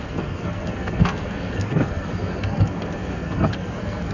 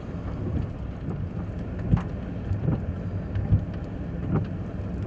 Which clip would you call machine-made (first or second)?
first